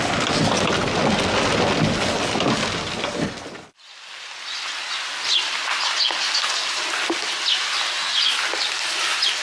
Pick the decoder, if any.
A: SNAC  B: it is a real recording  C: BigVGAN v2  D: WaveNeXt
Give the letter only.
B